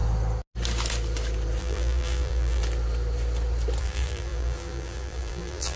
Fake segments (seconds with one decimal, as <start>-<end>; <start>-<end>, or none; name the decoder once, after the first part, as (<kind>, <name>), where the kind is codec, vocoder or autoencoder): 1.6-2.6 (vocoder, BigVGAN v2); 3.8-5.8